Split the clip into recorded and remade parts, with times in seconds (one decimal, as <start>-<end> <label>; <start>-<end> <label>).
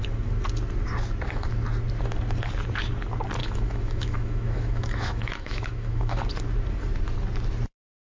0.0-3.4 recorded; 3.4-6.2 remade; 6.2-8.0 recorded